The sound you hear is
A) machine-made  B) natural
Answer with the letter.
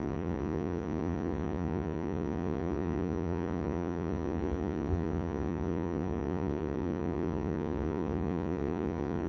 A